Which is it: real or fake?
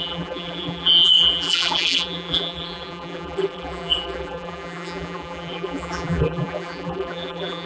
fake